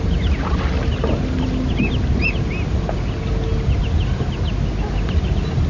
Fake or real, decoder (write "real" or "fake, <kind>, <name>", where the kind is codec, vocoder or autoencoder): real